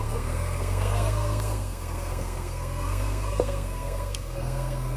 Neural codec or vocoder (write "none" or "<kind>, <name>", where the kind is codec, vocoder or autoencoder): codec, SNAC